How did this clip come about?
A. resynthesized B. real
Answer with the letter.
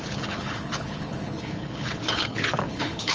A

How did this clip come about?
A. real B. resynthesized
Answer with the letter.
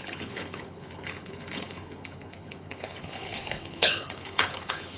B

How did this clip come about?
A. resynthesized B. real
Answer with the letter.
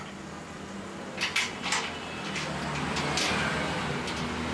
B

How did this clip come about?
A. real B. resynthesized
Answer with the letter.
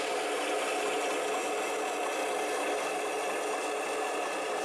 A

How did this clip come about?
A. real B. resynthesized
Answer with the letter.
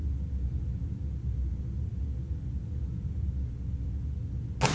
A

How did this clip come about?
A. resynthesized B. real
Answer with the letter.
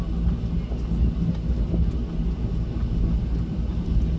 B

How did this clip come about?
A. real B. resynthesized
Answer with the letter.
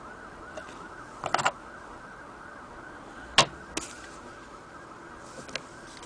A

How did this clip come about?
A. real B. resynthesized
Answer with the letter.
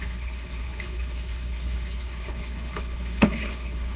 B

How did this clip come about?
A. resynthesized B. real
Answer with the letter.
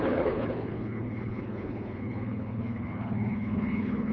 A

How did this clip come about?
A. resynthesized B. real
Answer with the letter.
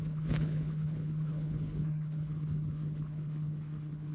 A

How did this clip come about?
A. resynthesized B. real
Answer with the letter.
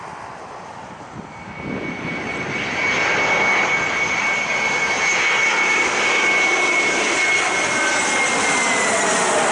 B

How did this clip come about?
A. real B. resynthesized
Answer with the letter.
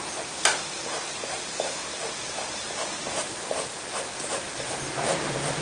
A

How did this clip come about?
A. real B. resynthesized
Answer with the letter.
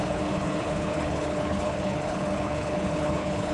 B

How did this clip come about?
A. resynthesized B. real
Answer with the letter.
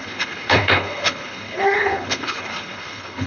A